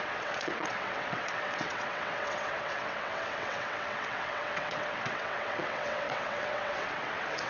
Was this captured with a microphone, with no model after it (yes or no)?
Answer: no